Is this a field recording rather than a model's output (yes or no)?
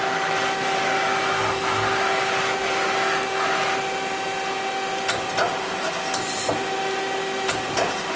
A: yes